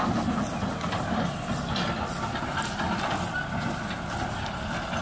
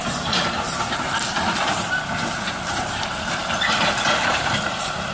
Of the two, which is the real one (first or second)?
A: first